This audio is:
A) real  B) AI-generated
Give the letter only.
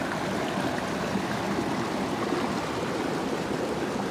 A